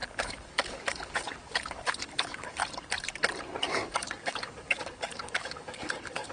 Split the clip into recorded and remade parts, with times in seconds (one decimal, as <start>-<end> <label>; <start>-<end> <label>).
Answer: 0.0-2.6 remade; 2.6-3.6 recorded; 3.6-6.3 remade